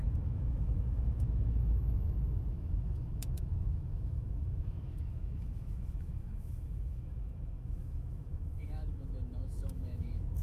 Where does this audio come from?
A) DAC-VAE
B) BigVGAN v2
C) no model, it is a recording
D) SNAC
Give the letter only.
A